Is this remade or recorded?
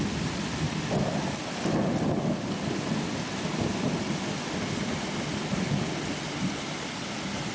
recorded